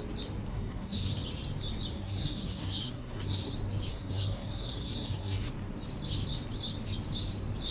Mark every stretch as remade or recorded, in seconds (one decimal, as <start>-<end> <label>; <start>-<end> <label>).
0.0-0.5 recorded; 0.5-1.1 remade; 1.1-1.9 recorded; 1.9-3.5 remade; 3.5-3.9 recorded; 3.9-5.5 remade; 5.5-7.7 recorded